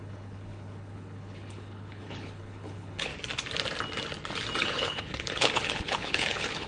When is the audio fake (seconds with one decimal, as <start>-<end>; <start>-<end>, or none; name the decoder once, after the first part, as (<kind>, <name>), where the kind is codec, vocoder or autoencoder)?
0.0-3.1 (codec, HILCodec); 4.6-6.7